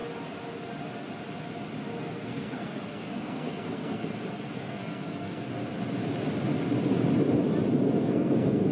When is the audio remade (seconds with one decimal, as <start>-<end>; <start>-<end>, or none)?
2.0-5.5; 8.0-8.7